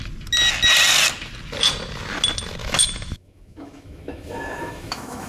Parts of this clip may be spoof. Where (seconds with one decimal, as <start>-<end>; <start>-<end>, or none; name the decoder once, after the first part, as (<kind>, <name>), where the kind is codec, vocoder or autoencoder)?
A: 2.6-5.3 (autoencoder, DAC-VAE)